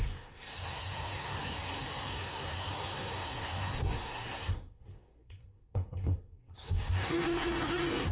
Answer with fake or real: fake